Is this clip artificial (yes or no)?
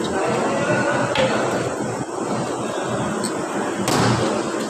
no